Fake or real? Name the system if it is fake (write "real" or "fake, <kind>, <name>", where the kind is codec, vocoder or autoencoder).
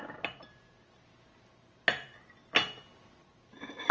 real